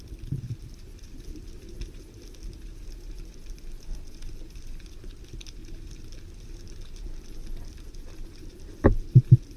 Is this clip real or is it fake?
real